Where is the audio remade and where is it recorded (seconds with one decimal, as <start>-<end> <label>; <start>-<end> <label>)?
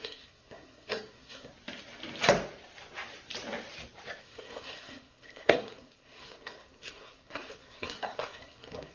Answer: 0.0-1.5 remade; 1.5-4.2 recorded; 4.2-8.9 remade